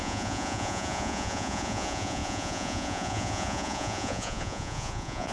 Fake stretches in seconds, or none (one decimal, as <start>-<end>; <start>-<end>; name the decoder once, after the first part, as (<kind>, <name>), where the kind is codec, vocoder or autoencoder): 0.0-5.3 (vocoder, Vocos)